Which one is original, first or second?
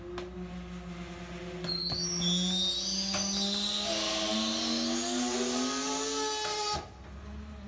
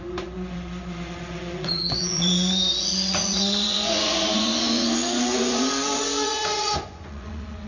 first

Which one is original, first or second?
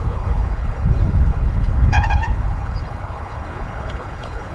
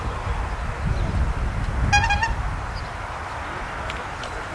second